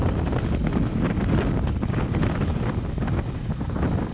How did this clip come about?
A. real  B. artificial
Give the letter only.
A